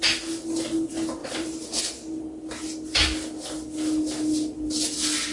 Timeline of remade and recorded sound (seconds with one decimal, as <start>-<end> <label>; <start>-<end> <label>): 0.0-1.2 recorded; 1.2-1.8 remade; 1.8-5.3 recorded